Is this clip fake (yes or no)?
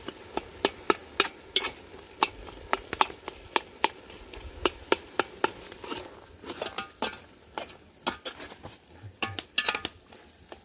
no